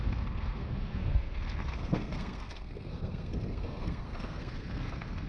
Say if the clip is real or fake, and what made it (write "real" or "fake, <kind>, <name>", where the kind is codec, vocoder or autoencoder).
fake, codec, SNAC